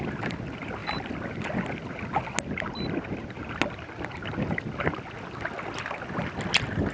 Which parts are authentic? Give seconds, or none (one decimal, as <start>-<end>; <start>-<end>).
0.0-6.9